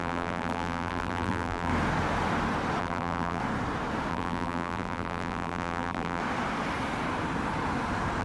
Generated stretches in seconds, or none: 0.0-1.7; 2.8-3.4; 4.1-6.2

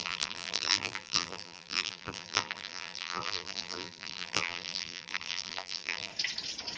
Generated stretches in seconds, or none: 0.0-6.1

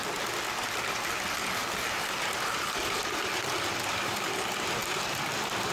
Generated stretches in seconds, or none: 0.9-5.7